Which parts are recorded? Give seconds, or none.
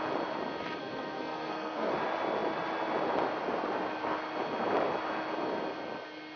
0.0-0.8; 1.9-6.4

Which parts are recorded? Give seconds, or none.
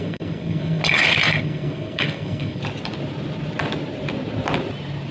0.8-1.4; 2.6-5.1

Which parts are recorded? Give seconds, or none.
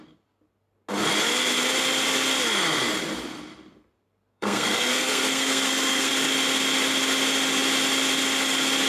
0.0-4.3; 6.1-8.9